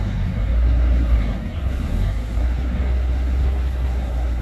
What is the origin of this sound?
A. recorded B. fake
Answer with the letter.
B